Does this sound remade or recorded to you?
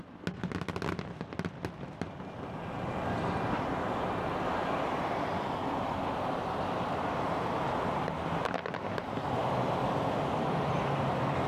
recorded